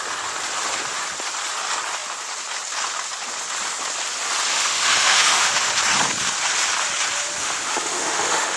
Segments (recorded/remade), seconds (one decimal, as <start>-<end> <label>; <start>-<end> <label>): 0.0-4.5 recorded; 4.5-5.7 remade; 5.7-7.4 recorded; 7.4-8.6 remade